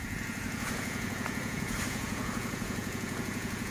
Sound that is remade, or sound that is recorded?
remade